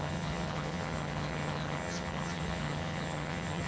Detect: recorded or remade remade